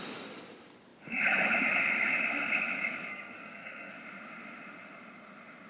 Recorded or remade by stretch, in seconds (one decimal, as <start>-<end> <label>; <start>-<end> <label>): 0.0-3.1 recorded; 3.1-3.9 remade; 3.9-5.7 recorded